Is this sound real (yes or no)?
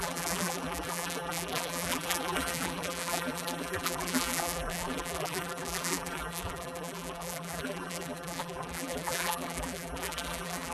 no